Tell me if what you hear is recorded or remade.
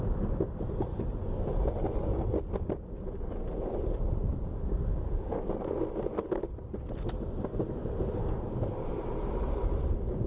recorded